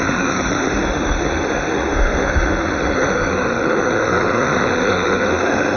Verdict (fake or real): fake